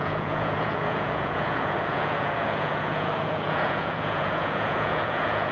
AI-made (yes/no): yes